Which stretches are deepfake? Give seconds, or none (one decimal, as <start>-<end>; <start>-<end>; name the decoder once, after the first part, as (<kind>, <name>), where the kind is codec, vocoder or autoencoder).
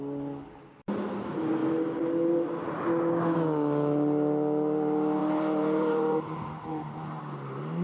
5.2-7.2 (vocoder, BigVGAN v2)